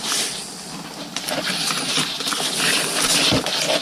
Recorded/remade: recorded